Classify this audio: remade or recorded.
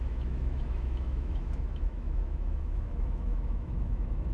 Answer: remade